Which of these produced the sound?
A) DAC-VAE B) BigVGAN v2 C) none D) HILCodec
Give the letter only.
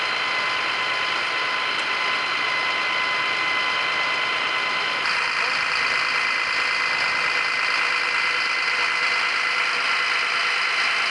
C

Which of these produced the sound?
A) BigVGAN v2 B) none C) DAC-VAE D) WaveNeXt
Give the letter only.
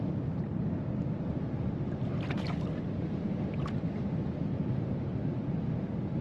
B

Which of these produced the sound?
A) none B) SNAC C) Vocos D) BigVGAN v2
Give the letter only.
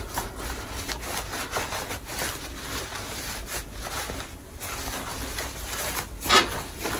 A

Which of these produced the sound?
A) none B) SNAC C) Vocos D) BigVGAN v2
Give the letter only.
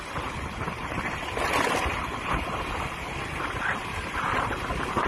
A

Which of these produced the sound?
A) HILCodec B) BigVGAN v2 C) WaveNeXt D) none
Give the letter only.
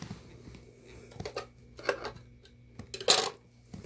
D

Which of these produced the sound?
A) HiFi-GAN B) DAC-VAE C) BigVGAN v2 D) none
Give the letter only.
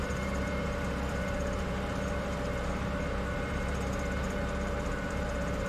C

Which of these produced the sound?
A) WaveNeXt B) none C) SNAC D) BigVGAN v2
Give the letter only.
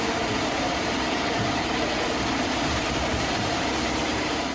D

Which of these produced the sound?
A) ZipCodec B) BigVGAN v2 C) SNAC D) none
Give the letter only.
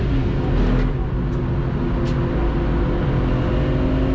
D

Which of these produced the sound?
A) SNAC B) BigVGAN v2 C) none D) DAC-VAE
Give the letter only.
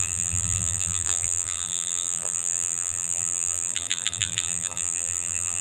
B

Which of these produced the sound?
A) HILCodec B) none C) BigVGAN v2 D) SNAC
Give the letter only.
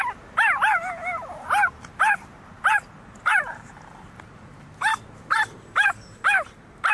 C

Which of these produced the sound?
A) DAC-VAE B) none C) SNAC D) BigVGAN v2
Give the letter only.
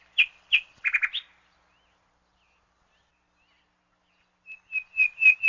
B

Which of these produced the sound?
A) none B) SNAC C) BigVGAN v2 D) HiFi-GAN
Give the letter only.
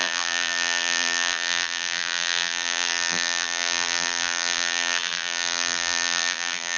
C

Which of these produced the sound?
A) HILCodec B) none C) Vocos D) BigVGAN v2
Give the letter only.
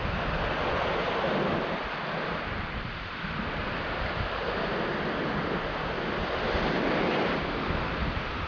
B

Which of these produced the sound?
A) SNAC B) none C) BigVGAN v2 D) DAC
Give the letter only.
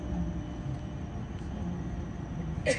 B